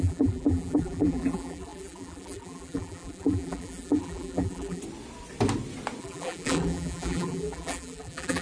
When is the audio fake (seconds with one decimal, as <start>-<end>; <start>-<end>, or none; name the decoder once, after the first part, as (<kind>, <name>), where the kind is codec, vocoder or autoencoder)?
0.0-4.8 (vocoder, BigVGAN v2); 6.0-8.4